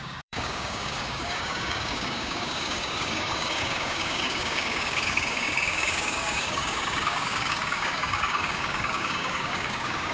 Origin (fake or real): fake